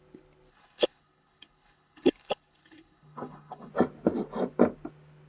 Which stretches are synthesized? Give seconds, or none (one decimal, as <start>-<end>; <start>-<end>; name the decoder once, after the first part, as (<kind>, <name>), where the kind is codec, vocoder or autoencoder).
0.5-3.7 (codec, HILCodec)